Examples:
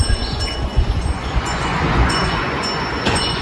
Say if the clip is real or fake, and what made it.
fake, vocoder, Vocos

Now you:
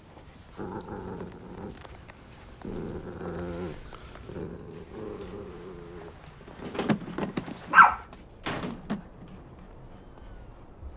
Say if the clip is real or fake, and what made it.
real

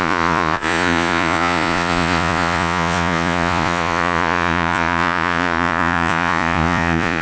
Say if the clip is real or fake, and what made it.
fake, vocoder, Vocos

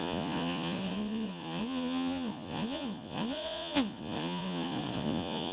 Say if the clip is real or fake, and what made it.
fake, vocoder, Vocos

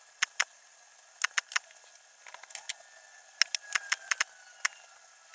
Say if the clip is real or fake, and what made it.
real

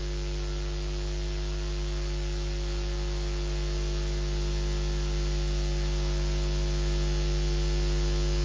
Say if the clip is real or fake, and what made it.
real